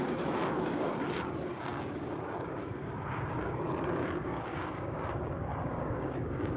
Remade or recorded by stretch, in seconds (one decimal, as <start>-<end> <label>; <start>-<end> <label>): 0.0-6.6 remade